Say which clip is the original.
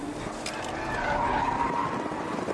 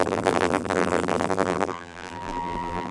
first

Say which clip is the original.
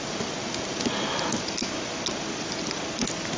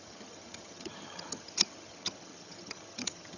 first